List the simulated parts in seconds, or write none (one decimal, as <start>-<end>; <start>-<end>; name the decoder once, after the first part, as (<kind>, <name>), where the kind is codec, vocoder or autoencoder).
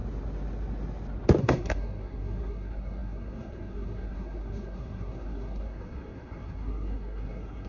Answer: 1.4-7.7 (codec, SNAC)